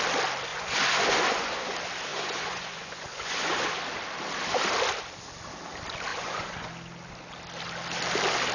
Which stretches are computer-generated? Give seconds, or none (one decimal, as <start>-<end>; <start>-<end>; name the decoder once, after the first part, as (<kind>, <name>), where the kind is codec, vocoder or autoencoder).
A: 0.5-1.7 (vocoder, Vocos); 2.1-3.8; 6.1-6.7